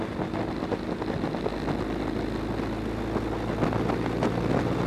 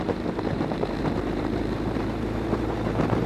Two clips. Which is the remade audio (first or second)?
second